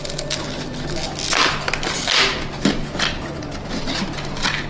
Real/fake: real